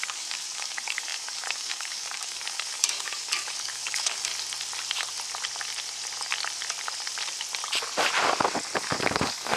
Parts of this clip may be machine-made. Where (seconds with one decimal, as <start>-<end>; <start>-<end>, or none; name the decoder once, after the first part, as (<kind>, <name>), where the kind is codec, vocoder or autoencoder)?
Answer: 0.0-4.3 (codec, DAC); 8.8-9.6